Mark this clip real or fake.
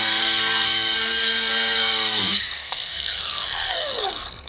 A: fake